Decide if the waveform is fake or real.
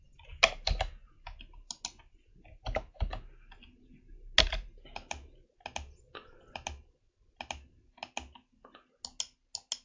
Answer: real